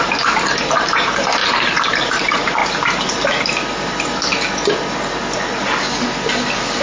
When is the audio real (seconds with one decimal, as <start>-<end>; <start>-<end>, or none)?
2.6-6.8